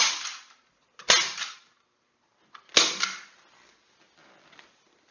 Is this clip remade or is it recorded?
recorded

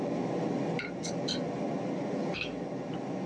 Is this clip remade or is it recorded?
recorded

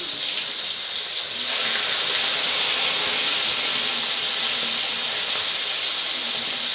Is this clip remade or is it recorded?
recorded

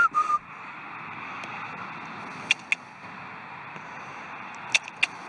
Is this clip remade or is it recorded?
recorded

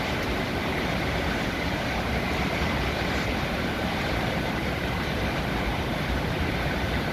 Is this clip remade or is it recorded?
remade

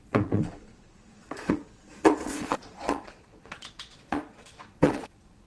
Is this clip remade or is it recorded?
remade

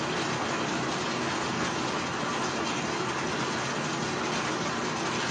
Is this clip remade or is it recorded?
recorded